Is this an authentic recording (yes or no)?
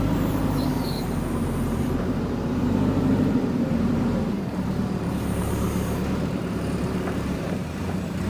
no